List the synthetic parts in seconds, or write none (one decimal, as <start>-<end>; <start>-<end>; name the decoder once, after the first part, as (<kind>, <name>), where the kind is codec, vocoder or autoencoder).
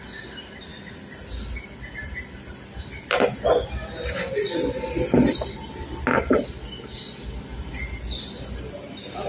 none